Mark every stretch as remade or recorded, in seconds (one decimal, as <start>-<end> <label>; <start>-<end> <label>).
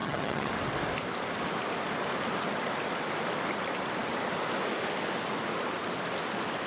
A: 0.0-0.5 remade; 0.5-6.7 recorded